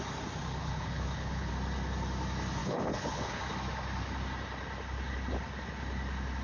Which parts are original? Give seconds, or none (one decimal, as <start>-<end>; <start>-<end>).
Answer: 0.0-0.6; 1.5-2.6; 3.4-6.4